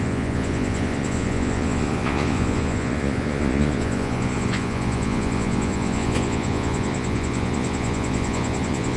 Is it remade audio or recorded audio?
remade